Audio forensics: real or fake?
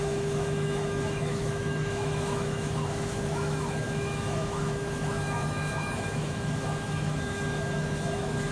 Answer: fake